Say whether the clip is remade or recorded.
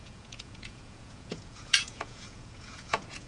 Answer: remade